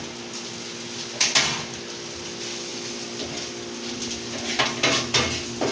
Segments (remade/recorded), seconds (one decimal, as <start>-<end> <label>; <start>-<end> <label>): 0.0-5.7 recorded